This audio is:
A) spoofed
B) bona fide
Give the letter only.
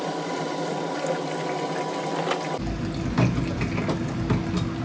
B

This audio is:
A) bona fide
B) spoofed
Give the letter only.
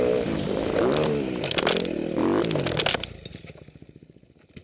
A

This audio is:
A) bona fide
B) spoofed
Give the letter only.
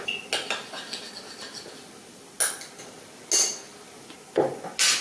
A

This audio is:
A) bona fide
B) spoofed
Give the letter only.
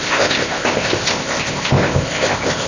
B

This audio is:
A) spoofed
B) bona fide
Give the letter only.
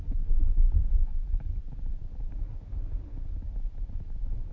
B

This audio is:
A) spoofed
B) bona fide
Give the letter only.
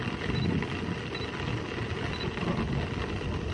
B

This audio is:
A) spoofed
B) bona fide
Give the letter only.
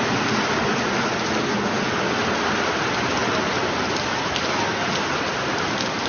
B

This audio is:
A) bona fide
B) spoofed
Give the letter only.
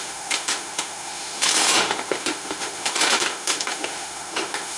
B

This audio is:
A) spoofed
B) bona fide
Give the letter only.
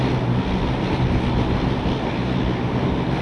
B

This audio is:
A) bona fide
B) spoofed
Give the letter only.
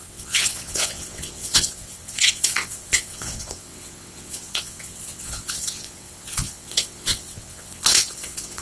B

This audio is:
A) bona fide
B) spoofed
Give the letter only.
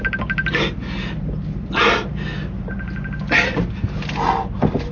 A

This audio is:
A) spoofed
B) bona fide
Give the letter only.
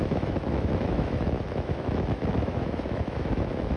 A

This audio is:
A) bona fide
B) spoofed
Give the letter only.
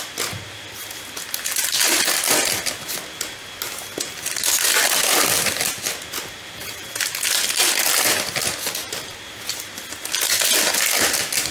A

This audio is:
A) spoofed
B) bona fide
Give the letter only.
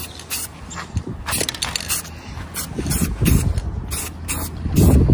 B